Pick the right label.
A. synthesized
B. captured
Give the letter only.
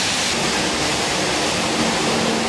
B